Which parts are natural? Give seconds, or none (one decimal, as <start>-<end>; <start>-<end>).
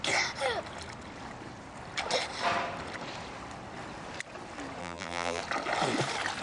0.0-4.8; 5.4-6.4